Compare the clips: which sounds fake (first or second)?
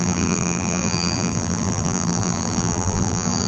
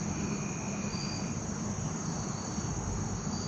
first